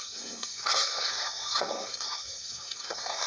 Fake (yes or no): yes